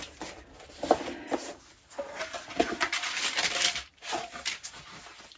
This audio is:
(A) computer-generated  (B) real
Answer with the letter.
B